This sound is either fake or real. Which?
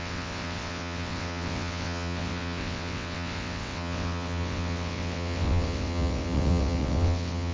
fake